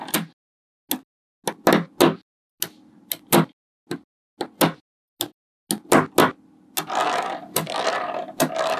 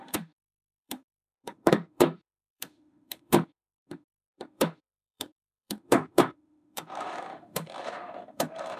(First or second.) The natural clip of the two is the first